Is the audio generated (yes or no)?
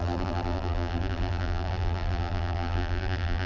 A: yes